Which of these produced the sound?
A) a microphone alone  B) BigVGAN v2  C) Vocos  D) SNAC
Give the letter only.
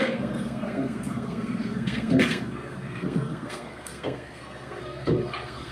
D